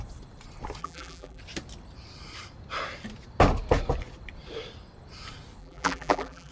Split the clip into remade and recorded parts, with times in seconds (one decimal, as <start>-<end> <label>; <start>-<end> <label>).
0.0-0.8 recorded; 0.8-1.4 remade; 1.4-5.6 recorded; 5.6-6.5 remade